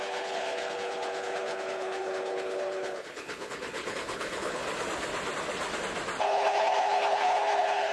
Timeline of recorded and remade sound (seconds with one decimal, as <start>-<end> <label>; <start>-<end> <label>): 0.0-4.6 remade; 4.6-6.2 recorded; 6.2-7.9 remade